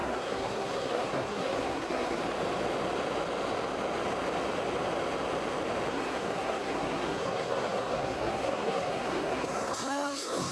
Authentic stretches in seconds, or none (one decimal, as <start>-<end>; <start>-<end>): 2.2-5.9